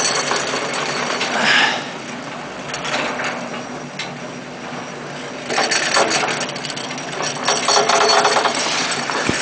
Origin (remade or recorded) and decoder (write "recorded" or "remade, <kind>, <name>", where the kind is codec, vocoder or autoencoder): recorded